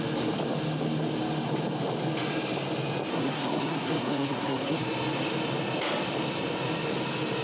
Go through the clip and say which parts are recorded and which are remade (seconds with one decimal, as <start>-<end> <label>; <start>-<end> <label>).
0.0-3.1 recorded; 3.1-4.8 remade; 4.8-7.4 recorded